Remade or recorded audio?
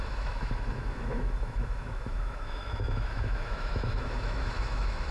remade